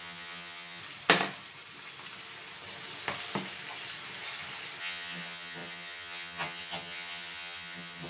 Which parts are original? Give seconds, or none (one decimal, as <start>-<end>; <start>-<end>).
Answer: 0.8-4.8